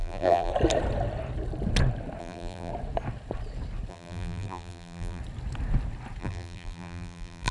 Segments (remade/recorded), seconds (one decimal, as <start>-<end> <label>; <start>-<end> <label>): 0.0-0.5 remade; 0.5-2.2 recorded; 2.2-2.7 remade; 2.7-3.9 recorded; 3.9-5.2 remade; 5.2-6.2 recorded; 6.2-7.5 remade